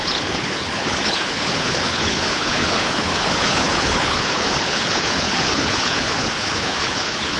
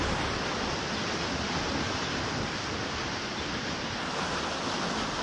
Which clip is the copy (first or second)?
first